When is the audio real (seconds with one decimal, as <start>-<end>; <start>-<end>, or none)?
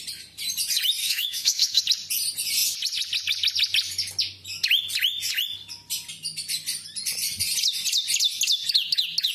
0.0-1.0; 1.8-9.3